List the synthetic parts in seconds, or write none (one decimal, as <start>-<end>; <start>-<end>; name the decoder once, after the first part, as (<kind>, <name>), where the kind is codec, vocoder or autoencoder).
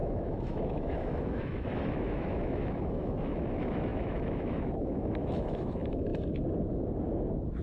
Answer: 0.0-6.1 (autoencoder, DAC-VAE)